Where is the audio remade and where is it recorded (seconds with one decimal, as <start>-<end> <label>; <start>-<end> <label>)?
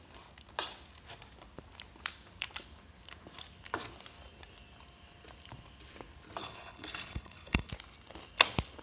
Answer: 0.0-6.4 recorded; 6.4-7.7 remade; 7.7-8.8 recorded